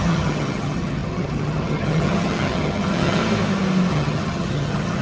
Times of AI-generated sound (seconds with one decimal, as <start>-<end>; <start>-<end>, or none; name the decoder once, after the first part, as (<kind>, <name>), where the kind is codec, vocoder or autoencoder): 0.0-3.2 (vocoder, HiFi-GAN); 3.9-5.0